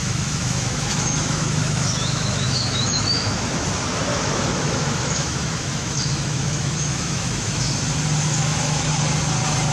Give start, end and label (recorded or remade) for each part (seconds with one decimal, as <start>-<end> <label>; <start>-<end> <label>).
0.0-3.6 remade; 3.6-4.1 recorded; 4.1-7.7 remade; 7.7-8.4 recorded; 8.4-8.9 remade; 8.9-9.7 recorded